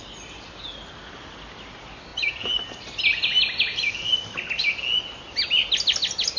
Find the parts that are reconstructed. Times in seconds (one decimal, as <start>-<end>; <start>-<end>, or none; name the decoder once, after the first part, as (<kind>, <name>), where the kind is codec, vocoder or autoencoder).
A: none